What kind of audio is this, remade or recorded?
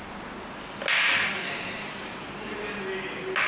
recorded